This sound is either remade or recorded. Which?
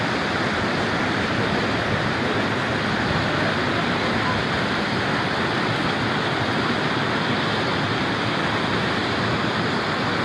recorded